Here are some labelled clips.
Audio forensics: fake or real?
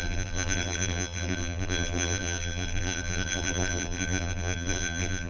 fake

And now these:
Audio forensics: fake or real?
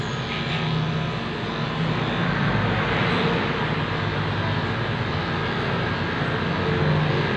real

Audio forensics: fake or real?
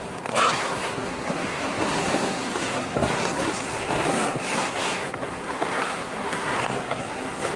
fake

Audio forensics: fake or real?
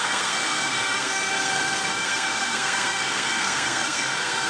fake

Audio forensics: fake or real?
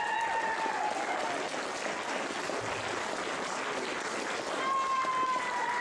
real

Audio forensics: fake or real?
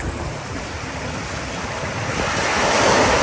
real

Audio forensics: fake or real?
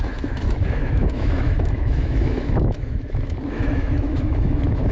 fake